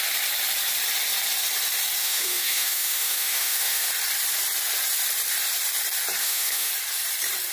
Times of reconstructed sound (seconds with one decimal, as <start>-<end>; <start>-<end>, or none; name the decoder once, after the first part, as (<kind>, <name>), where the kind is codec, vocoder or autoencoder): 2.0-3.9 (autoencoder, DAC-VAE); 6.2-6.7